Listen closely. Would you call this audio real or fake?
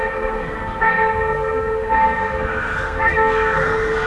fake